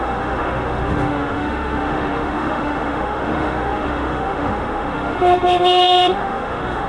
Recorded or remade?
remade